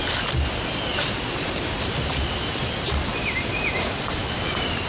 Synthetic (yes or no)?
yes